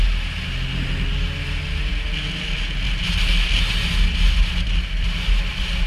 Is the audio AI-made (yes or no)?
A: no